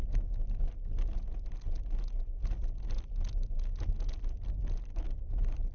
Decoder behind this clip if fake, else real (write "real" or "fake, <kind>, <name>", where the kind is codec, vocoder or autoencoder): real